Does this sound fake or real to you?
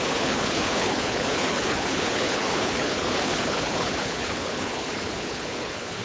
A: fake